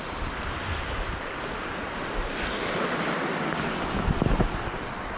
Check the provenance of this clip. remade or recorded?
recorded